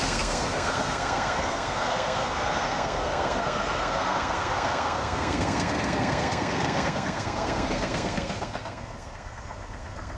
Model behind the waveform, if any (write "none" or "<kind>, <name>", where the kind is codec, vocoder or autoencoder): codec, SNAC